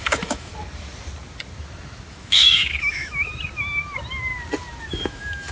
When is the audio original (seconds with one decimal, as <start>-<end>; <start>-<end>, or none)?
0.5-2.1; 3.3-4.9